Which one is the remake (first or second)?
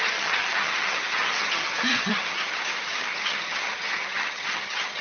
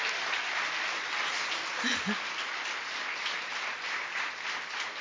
first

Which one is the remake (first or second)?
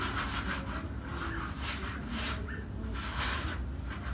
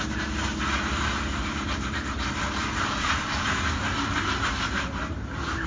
second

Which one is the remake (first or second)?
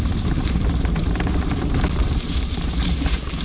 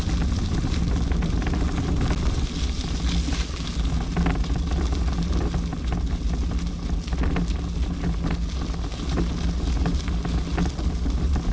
first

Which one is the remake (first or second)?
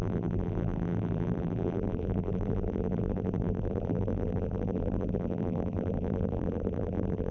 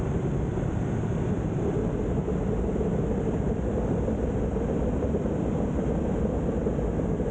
first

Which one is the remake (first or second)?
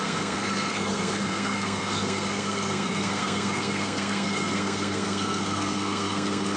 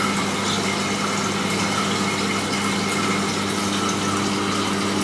first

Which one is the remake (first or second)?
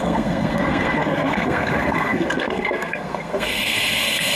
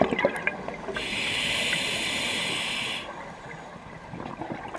first